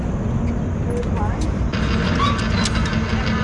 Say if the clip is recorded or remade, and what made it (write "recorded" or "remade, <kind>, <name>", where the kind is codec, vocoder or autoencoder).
recorded